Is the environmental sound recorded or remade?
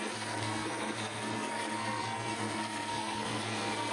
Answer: remade